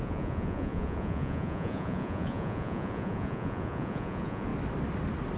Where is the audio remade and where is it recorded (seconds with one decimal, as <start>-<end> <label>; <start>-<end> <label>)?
0.0-4.5 remade; 4.5-5.4 recorded